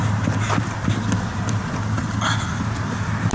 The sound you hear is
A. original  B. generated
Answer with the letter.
A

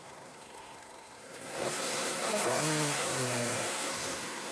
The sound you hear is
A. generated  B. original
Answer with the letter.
A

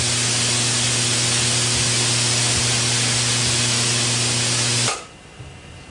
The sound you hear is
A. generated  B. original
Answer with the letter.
B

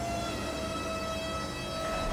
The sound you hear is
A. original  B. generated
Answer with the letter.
A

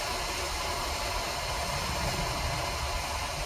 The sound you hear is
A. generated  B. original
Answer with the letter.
B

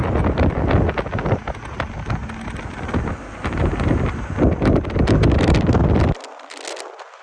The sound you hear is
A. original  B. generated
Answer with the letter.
A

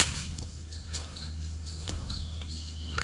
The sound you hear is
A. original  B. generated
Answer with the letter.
B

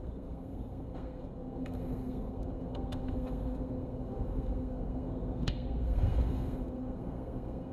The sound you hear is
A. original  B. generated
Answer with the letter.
B